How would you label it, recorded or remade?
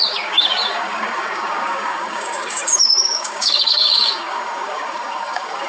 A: remade